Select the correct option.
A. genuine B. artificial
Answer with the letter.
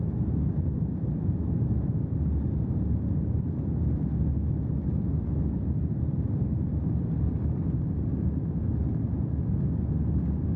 A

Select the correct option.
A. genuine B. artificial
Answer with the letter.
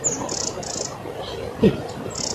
A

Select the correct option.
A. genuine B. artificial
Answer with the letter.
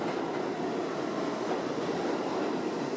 A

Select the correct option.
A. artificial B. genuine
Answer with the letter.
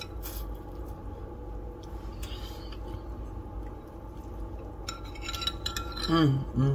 B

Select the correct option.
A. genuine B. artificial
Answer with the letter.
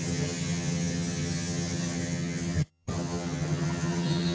B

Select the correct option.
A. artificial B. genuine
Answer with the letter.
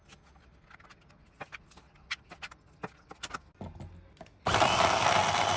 B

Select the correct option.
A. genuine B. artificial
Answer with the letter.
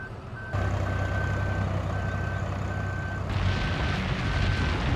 A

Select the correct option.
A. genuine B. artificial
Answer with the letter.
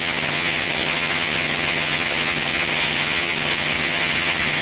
B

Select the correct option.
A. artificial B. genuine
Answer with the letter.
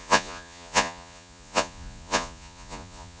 A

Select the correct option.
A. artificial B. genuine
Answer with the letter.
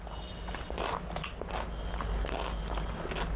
B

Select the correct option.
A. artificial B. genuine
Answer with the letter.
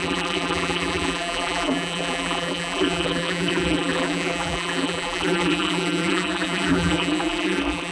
A